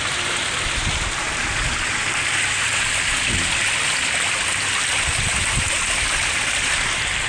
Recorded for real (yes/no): yes